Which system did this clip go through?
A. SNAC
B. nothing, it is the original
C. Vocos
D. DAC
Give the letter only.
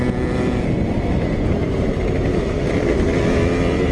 B